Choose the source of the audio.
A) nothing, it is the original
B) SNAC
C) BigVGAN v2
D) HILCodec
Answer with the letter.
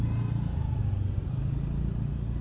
A